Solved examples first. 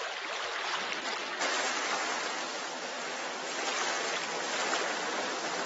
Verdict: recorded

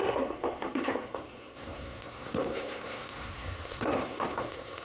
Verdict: remade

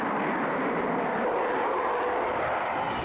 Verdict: recorded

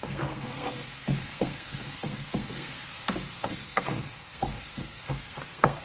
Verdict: remade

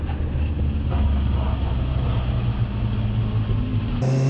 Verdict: recorded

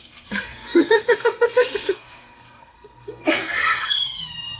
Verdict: remade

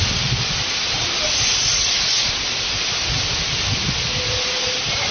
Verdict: recorded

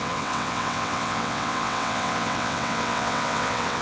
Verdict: remade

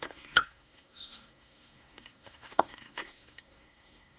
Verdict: remade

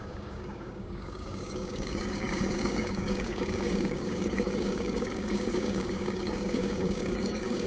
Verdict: remade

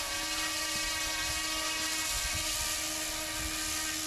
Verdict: recorded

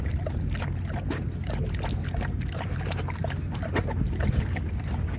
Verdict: recorded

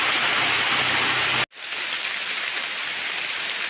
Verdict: recorded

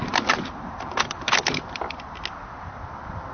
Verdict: recorded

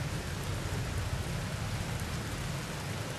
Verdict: recorded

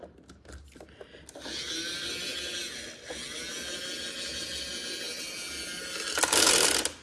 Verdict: recorded